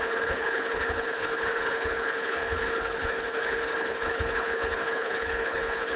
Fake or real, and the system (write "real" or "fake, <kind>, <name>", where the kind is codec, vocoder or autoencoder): fake, codec, HILCodec